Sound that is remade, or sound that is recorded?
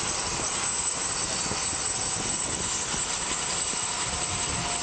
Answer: recorded